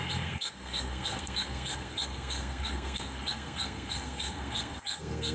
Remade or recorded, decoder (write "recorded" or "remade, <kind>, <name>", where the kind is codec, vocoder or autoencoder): remade, codec, SNAC